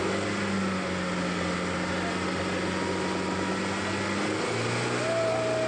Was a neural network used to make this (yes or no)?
no